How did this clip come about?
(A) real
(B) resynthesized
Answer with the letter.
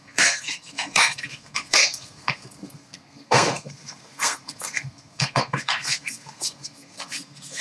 B